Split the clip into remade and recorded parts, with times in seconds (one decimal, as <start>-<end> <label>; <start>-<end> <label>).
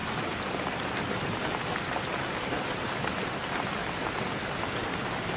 0.0-5.4 recorded